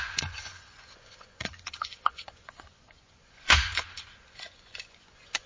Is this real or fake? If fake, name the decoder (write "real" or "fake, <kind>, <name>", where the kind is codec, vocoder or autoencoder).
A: fake, vocoder, Vocos